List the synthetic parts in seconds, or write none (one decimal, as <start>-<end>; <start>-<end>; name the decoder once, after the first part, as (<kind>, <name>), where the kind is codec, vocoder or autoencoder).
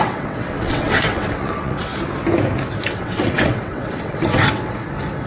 0.0-1.9 (vocoder, WaveNeXt); 2.9-4.8